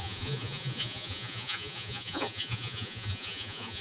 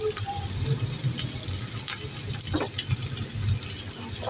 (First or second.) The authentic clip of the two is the second